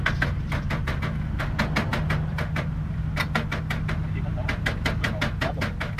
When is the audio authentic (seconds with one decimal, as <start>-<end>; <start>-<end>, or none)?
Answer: 0.0-6.0